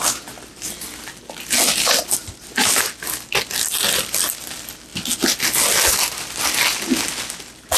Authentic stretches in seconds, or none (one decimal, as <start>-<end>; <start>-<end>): 0.0-7.8